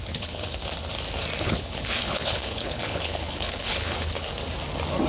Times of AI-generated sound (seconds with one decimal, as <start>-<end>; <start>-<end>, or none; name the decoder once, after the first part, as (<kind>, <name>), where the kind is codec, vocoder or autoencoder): 0.0-0.6 (codec, HILCodec); 1.4-4.3